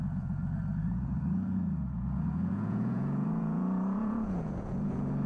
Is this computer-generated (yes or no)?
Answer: yes